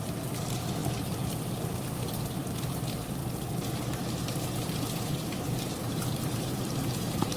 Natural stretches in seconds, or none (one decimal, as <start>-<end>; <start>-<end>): 0.8-1.7; 3.2-4.2